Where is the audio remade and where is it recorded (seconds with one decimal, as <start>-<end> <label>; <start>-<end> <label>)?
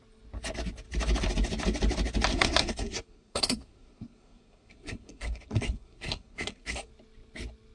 0.0-2.3 recorded; 2.3-6.9 remade; 6.9-7.7 recorded